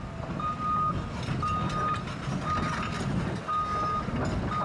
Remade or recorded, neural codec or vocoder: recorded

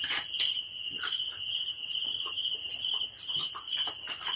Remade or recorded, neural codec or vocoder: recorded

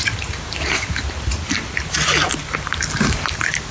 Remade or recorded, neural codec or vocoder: recorded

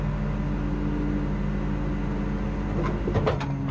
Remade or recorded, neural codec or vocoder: recorded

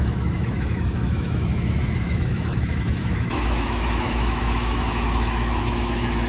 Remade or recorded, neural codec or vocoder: remade, autoencoder, DAC-VAE